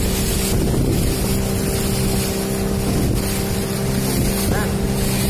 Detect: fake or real real